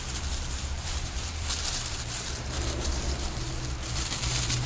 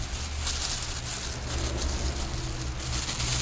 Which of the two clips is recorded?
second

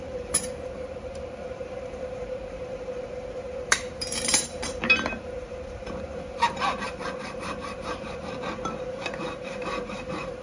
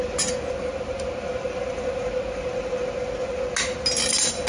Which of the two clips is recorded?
second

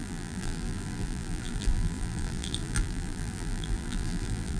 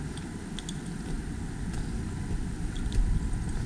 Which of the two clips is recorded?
second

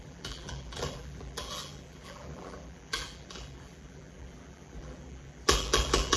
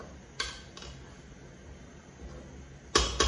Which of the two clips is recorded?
second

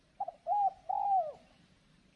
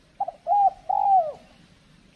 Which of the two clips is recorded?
second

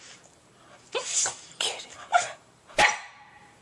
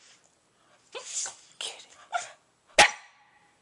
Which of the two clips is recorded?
second